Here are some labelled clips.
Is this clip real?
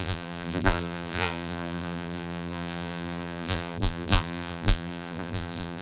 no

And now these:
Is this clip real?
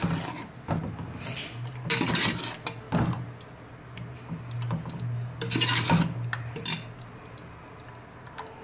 yes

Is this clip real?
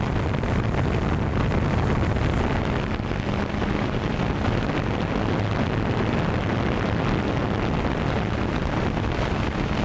yes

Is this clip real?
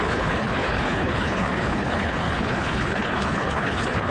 no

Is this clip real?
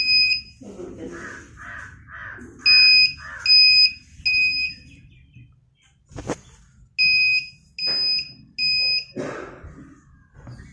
yes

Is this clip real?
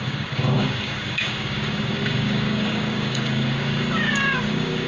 no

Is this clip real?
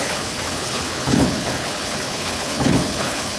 no